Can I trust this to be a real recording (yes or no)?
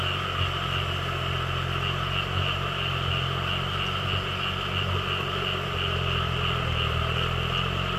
yes